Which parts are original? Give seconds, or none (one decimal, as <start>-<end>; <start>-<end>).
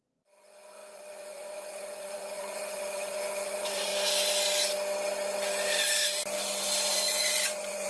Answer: 3.9-6.9